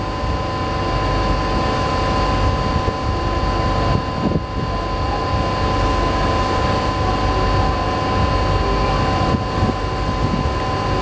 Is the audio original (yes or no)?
yes